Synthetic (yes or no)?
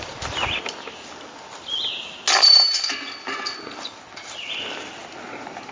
no